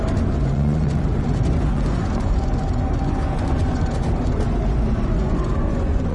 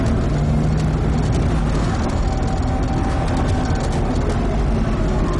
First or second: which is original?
second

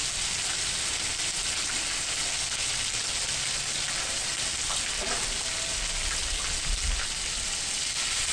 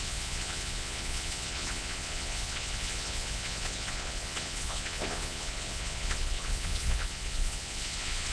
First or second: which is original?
first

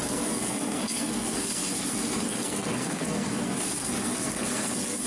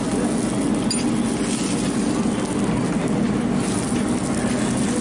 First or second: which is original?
second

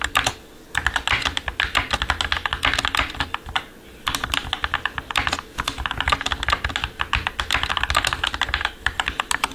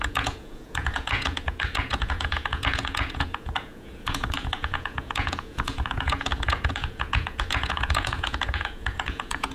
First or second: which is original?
first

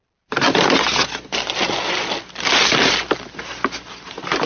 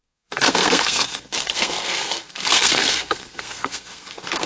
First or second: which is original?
first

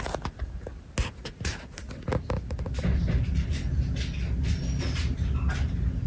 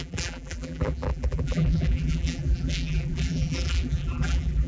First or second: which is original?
first